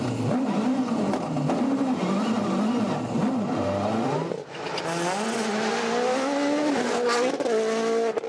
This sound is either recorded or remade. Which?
recorded